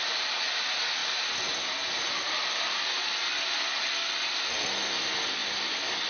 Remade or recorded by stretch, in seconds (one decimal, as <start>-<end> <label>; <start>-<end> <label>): 0.0-6.1 recorded